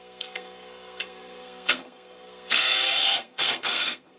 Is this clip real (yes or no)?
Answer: no